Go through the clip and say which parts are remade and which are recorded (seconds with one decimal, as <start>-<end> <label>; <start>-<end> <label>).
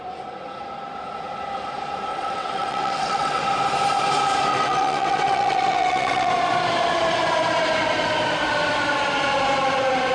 0.0-2.1 recorded; 2.1-3.4 remade; 3.4-4.5 recorded; 4.5-6.3 remade; 6.3-10.1 recorded